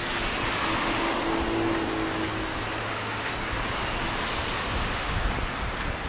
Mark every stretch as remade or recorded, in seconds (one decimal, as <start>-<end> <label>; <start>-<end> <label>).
0.0-0.7 recorded; 0.7-1.2 remade; 1.2-2.8 recorded; 2.8-3.3 remade; 3.3-4.6 recorded; 4.6-5.3 remade; 5.3-6.1 recorded